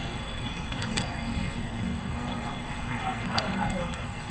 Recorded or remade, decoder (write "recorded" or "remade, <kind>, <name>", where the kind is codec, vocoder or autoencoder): remade, codec, SNAC